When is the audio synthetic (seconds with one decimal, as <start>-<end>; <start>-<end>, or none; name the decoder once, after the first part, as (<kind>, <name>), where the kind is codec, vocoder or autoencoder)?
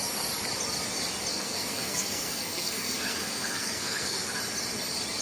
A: 1.3-4.4 (codec, SNAC)